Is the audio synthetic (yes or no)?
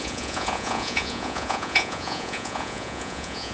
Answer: yes